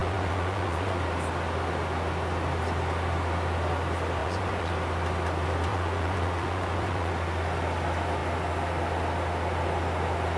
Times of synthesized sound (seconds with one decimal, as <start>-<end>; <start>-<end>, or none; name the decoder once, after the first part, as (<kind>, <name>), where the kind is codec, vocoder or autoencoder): 0.0-1.0 (vocoder, Vocos); 4.2-4.7; 5.7-7.1

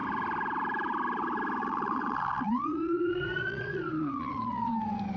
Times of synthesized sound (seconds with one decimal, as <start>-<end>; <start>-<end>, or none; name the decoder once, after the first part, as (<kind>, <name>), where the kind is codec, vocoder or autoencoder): 1.6-4.7 (vocoder, Vocos)

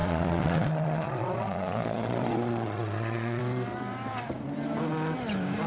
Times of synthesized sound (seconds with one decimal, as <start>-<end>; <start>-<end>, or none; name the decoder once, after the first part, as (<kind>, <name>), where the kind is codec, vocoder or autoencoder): 0.0-3.4 (vocoder, Vocos)